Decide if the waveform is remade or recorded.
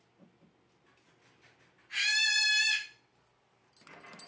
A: recorded